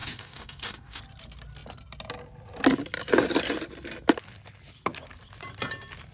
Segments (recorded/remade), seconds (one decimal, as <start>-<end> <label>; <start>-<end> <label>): 0.0-1.0 remade; 1.0-6.1 recorded